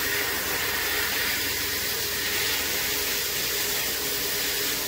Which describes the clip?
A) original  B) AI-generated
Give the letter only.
A